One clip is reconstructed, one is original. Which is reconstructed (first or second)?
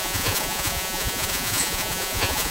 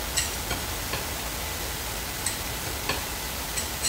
first